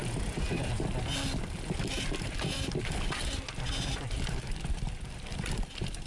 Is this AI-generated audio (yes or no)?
no